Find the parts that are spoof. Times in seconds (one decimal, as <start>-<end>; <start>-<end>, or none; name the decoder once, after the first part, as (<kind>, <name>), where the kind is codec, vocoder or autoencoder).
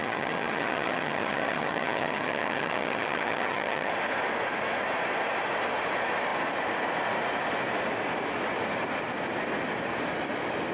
0.0-3.9 (vocoder, HiFi-GAN)